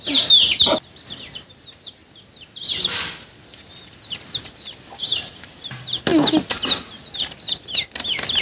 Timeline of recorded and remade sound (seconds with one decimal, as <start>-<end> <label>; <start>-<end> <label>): 0.0-8.4 recorded